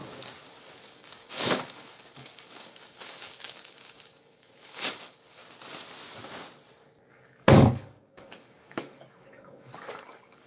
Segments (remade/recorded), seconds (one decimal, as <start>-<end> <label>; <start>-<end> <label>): 0.0-0.6 recorded; 0.6-5.4 remade; 5.4-7.1 recorded; 7.1-10.5 remade